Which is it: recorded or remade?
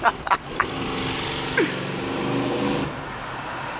recorded